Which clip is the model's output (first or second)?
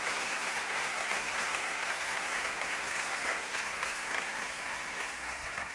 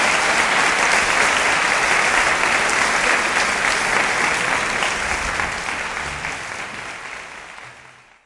first